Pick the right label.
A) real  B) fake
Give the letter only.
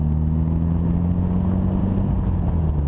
A